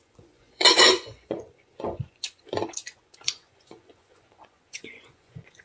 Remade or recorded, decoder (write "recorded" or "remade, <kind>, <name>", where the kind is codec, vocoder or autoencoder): remade, vocoder, Vocos